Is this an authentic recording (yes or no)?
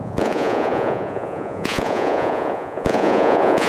no